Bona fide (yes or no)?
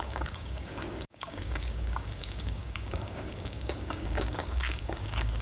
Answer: no